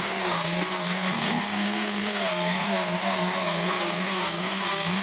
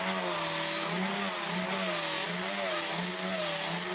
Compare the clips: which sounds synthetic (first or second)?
first